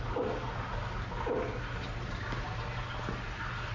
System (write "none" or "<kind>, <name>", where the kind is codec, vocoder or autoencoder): none